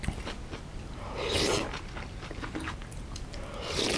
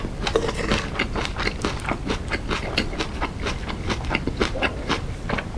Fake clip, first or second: second